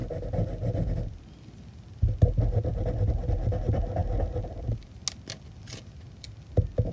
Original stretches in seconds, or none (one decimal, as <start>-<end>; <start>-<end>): 0.0-6.9